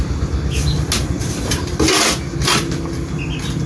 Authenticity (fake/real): real